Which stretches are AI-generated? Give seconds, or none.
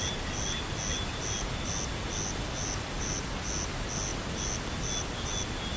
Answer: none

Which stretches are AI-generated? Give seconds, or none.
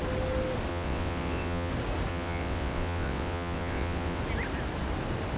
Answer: 0.7-1.7 (vocoder, WaveNeXt); 2.1-4.2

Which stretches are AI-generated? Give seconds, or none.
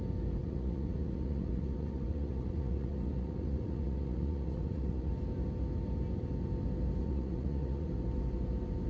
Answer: 0.4-5.1 (vocoder, Vocos); 7.0-7.9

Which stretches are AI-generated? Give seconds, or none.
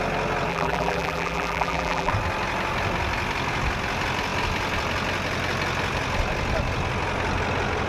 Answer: 0.5-2.1 (vocoder, BigVGAN v2)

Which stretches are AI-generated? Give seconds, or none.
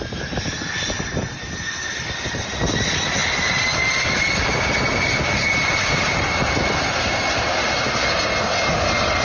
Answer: 3.2-5.9 (vocoder, BigVGAN v2); 7.6-8.2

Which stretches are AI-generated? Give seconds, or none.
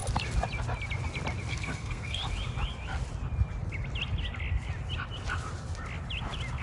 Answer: 1.5-2.2 (codec, SNAC)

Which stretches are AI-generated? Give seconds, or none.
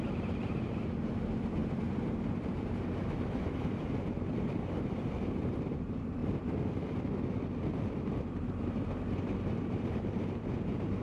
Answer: 0.0-6.2 (vocoder, BigVGAN v2); 7.7-11.0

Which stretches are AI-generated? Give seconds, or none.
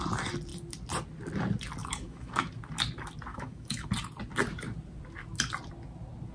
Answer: 1.8-2.5 (autoencoder, DAC-VAE); 3.3-3.9